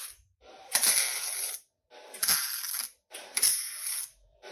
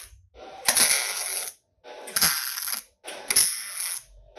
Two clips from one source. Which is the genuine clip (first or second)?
second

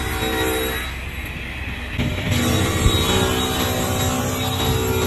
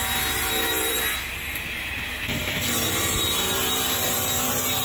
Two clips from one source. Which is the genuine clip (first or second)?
first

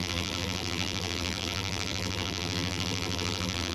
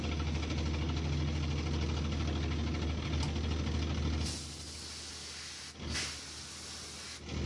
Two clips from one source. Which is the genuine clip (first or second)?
second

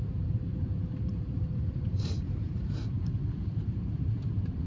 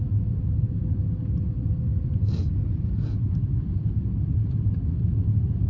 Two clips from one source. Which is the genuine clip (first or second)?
second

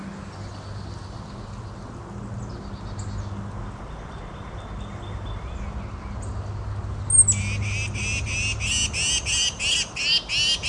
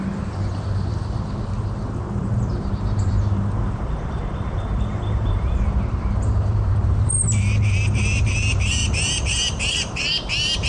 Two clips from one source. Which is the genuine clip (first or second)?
first